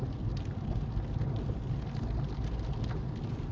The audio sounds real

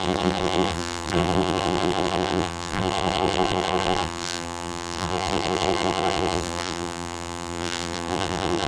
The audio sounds fake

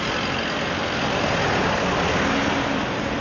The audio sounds real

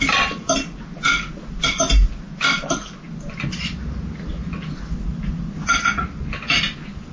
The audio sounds real